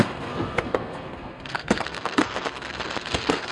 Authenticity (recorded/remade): remade